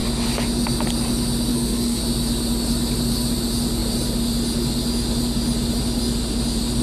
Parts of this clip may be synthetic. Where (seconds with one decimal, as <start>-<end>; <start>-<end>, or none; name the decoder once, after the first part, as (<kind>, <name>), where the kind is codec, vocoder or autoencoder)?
1.5-2.0 (codec, SNAC)